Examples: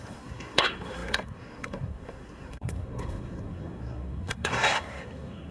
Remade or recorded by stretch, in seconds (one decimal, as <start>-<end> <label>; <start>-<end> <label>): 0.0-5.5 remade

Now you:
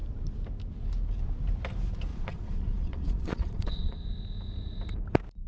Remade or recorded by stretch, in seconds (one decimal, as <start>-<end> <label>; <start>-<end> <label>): 0.0-2.1 recorded; 2.1-4.1 remade; 4.1-5.5 recorded

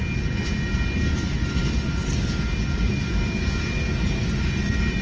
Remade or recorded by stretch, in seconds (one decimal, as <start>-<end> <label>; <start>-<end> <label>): 0.0-5.0 recorded

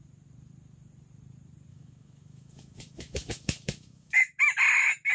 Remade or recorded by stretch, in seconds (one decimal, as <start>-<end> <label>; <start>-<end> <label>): 0.0-1.7 recorded; 1.7-4.4 remade; 4.4-5.1 recorded

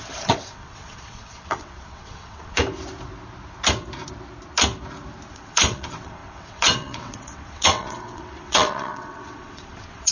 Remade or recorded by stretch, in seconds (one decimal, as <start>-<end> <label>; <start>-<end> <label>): 0.0-2.6 remade; 2.6-5.3 recorded; 5.3-10.1 remade